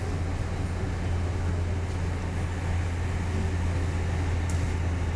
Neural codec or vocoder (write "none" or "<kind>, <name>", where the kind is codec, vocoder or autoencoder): none